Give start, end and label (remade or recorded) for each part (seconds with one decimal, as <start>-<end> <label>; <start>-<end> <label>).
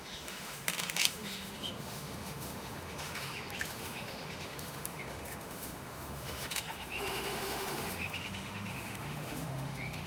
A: 0.0-10.1 remade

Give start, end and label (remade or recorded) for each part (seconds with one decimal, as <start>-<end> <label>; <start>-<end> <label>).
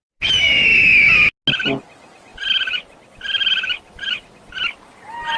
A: 0.0-5.4 recorded